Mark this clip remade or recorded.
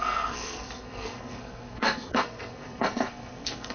remade